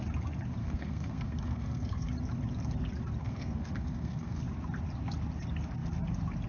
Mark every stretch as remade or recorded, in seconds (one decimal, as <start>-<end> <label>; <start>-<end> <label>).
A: 0.0-0.6 recorded; 0.6-2.1 remade; 2.1-3.2 recorded; 3.2-4.4 remade; 4.4-6.5 recorded